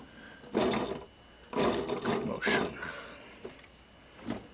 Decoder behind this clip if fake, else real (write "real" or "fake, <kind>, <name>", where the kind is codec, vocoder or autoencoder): real